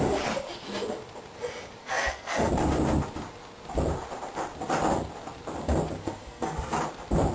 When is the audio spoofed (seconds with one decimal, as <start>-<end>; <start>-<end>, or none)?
1.8-2.5; 6.0-6.8